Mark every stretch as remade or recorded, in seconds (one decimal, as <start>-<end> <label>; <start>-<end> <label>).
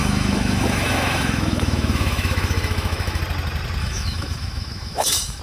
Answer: 0.0-3.2 remade; 3.2-3.8 recorded; 3.8-5.4 remade